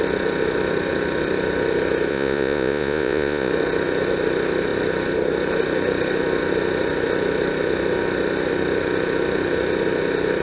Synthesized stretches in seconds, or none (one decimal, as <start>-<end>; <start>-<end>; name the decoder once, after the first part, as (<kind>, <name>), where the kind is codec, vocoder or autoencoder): 2.1-3.5 (vocoder, Vocos)